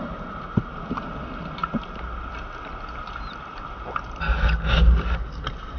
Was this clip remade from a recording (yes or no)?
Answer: no